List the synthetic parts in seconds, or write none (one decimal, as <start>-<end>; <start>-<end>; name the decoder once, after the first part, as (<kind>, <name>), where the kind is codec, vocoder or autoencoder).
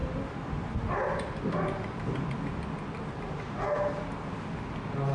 none